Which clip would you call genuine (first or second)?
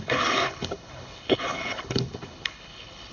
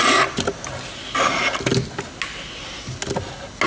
second